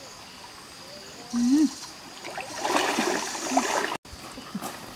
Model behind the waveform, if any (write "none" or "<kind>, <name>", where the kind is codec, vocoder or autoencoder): none